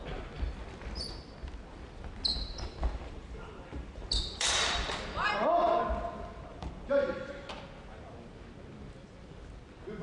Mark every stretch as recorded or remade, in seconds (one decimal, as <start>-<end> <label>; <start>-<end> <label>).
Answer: 0.0-2.3 recorded; 2.3-5.8 remade; 5.8-6.5 recorded; 6.5-7.3 remade; 7.3-10.0 recorded